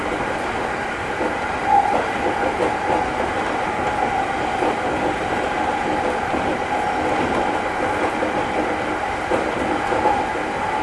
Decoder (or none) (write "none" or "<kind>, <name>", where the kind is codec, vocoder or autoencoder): none